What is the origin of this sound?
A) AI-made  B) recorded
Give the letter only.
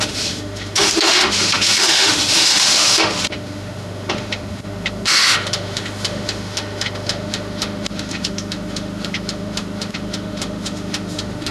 A